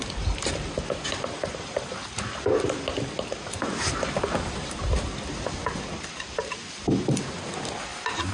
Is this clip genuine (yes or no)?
yes